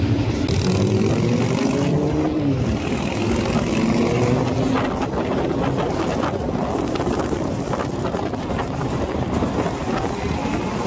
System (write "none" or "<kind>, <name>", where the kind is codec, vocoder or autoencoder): none